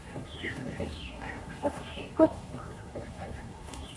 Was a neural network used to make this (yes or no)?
yes